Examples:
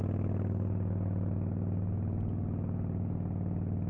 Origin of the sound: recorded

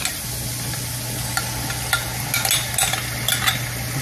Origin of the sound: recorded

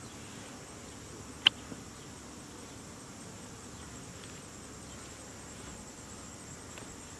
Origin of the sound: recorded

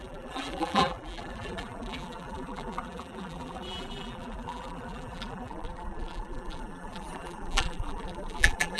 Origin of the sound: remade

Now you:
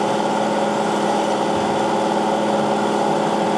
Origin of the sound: recorded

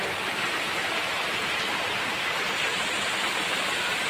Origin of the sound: recorded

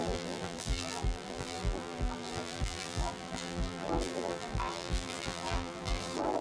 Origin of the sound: remade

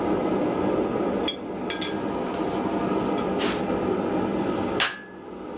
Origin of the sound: recorded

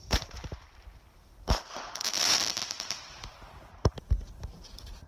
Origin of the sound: remade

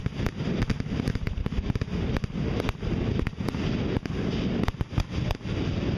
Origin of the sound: recorded